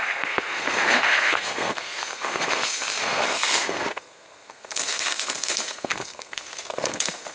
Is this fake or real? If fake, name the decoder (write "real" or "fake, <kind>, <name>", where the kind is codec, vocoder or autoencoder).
fake, codec, SNAC